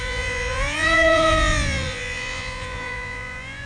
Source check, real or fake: fake